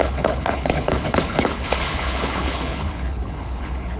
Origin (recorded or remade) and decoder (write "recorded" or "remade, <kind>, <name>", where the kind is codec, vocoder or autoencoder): remade, codec, HILCodec